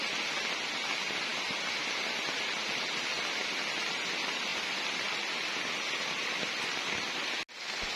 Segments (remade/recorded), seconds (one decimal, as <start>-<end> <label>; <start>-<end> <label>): 0.0-8.0 recorded